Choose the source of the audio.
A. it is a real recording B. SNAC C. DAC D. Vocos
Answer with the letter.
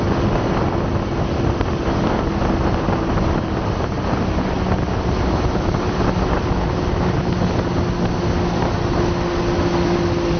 A